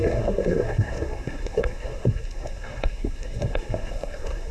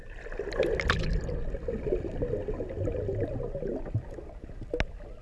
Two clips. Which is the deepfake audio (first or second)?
first